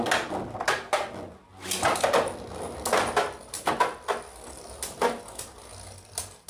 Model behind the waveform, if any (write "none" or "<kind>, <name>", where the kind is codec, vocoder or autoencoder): none